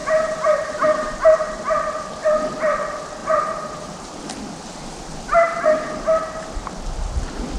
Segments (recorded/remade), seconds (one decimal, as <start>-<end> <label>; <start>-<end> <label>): 0.0-1.6 remade; 1.6-3.2 recorded; 3.2-4.2 remade; 4.2-7.6 recorded

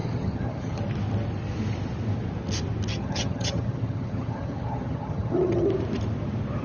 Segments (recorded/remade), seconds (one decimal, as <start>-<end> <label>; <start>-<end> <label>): 0.0-0.8 remade; 0.8-2.9 recorded; 2.9-5.7 remade; 5.7-6.6 recorded

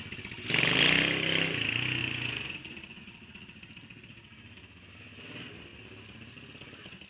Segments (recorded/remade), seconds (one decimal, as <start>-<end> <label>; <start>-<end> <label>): 0.0-2.0 recorded; 2.0-3.0 remade; 3.0-7.1 recorded

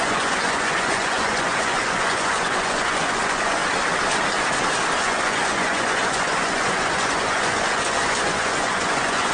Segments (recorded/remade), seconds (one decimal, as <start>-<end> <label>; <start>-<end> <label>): 0.0-3.6 remade; 3.6-5.0 recorded; 5.0-9.3 remade

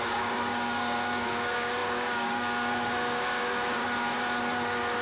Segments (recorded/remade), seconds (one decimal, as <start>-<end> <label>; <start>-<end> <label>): 0.0-3.8 remade; 3.8-5.0 recorded

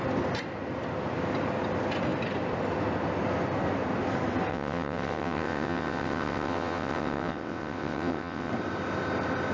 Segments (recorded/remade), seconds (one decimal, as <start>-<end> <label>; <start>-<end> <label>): 0.0-4.5 recorded; 4.5-8.5 remade; 8.5-9.5 recorded